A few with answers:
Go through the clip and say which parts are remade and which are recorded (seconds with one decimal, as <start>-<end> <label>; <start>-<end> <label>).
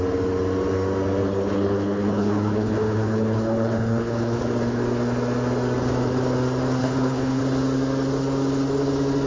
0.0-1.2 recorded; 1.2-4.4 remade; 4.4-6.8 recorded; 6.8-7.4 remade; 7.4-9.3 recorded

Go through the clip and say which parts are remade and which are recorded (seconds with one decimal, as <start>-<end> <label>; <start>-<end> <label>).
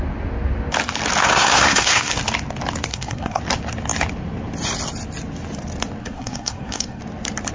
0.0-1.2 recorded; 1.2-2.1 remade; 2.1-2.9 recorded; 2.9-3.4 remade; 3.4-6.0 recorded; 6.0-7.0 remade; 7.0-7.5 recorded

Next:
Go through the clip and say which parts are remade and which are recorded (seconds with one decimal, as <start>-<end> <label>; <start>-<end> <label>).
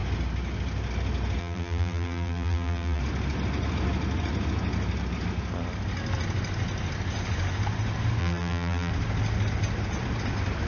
0.0-1.4 recorded; 1.4-3.0 remade; 3.0-8.2 recorded; 8.2-8.9 remade; 8.9-10.7 recorded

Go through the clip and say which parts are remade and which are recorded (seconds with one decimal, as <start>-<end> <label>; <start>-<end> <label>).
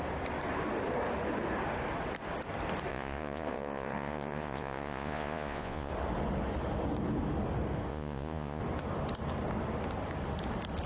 0.0-2.9 recorded; 2.9-5.9 remade; 5.9-7.9 recorded; 7.9-8.6 remade; 8.6-10.9 recorded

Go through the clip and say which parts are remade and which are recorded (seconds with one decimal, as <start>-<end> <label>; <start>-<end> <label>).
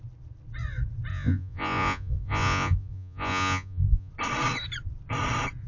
0.0-1.1 recorded; 1.1-4.1 remade; 4.1-5.7 recorded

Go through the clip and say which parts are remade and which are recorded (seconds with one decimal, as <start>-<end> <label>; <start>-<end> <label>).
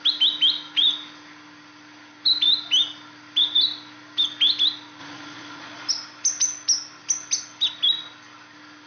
0.0-5.0 recorded; 5.0-5.9 remade; 5.9-8.9 recorded